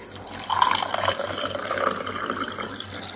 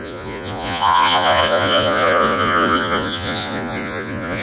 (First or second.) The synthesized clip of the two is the second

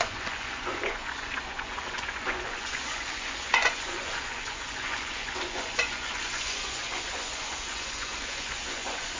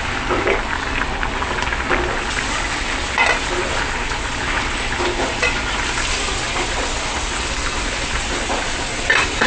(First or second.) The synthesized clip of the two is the first